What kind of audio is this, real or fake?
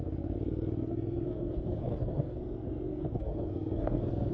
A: fake